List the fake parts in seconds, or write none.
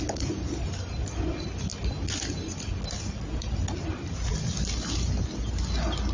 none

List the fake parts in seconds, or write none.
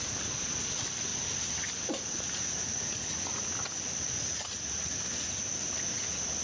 2.7-3.5 (vocoder, Vocos)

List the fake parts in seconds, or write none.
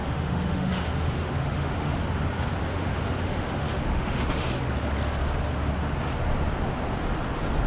0.0-2.0 (autoencoder, DAC-VAE); 2.7-4.6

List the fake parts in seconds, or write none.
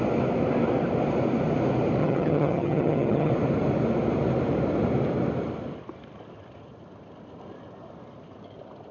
2.0-3.3 (vocoder, HiFi-GAN)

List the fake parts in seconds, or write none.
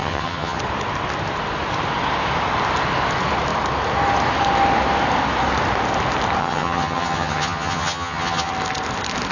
0.0-0.6 (vocoder, HiFi-GAN); 6.4-8.5